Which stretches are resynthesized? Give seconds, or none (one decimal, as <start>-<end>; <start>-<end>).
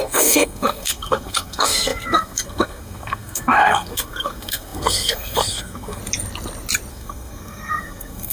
0.0-6.0; 6.9-8.3